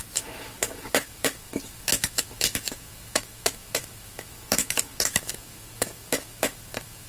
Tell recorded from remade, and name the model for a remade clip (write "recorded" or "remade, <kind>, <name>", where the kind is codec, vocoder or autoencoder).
remade, autoencoder, DAC-VAE